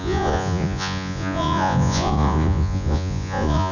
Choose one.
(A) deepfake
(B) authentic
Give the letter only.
A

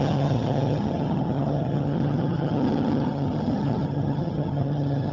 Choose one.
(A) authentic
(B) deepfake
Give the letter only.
B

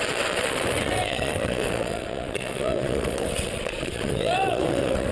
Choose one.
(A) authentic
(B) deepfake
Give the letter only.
B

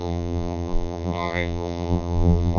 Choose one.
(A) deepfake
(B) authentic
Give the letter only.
A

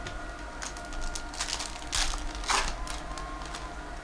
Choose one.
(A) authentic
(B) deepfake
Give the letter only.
A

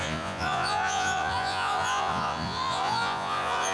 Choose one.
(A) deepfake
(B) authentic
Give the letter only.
A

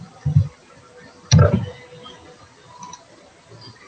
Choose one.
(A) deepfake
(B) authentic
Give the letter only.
B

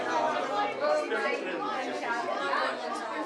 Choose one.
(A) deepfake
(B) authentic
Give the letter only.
B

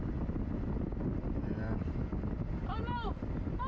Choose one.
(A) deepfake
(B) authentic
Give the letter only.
B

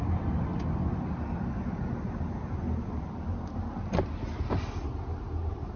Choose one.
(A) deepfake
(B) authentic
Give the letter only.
B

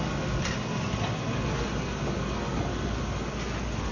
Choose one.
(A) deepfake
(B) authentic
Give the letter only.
B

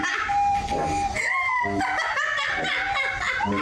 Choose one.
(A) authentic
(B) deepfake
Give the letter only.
A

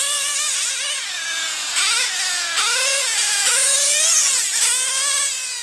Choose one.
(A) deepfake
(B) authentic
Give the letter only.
A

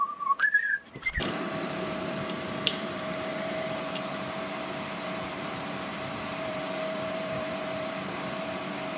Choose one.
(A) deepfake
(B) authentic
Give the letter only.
A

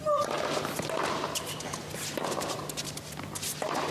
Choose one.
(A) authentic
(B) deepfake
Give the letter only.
A